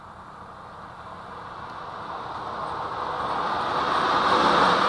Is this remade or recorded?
recorded